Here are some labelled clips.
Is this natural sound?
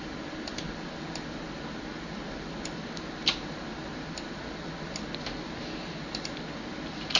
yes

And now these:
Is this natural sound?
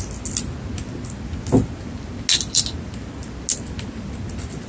yes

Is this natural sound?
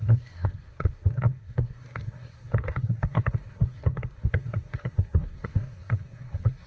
no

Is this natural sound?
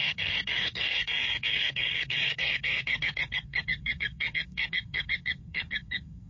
no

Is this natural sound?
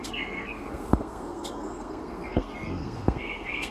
no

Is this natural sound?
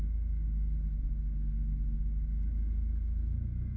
yes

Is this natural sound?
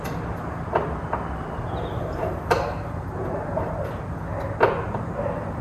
yes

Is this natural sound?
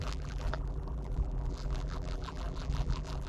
no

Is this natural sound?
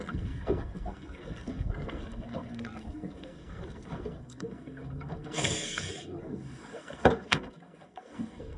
no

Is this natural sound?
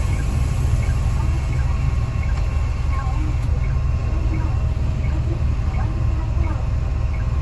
yes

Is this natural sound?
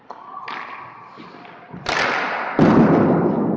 yes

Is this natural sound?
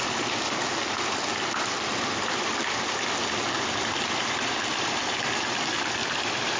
no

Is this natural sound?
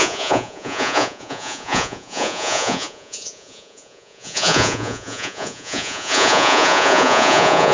no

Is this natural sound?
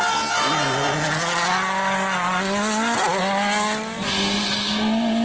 yes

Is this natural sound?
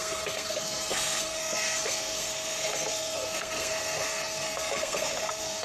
no